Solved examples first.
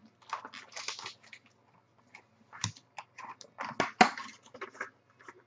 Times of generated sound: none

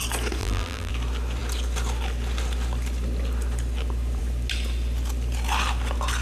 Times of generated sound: 0.4-0.9 (vocoder, BigVGAN v2)

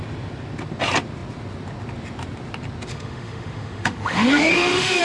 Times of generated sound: 2.9-5.0 (autoencoder, DAC-VAE)

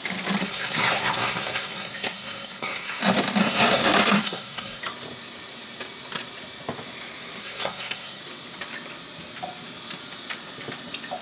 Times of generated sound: 0.4-3.0 (codec, SNAC); 3.4-4.8; 7.4-8.2

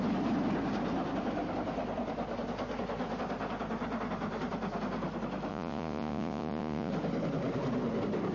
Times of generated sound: 5.5-6.9 (vocoder, Vocos)

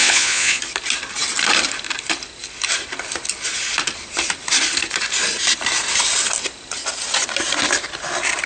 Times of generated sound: 0.0-0.6 (vocoder, Vocos)

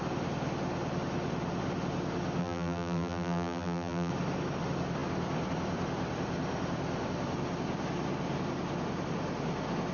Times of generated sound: 2.4-4.1 (vocoder, BigVGAN v2)